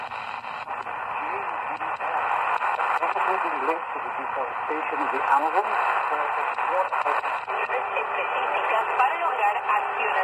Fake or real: real